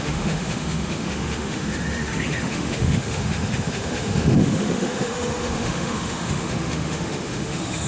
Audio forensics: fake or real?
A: fake